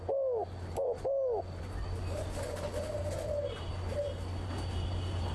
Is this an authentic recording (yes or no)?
yes